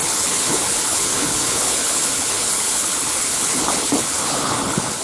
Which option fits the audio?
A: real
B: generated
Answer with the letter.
B